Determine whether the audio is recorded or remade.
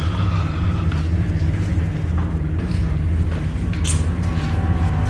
recorded